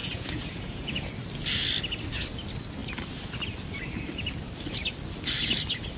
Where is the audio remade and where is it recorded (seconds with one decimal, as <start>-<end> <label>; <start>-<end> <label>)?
0.0-1.1 remade; 1.1-6.0 recorded